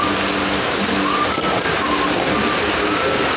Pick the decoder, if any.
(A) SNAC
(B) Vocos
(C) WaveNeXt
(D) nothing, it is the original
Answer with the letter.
D